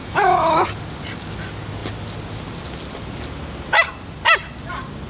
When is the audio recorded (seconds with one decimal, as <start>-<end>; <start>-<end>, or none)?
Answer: 0.7-5.1